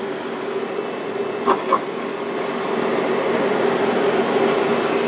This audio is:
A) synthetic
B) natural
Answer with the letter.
B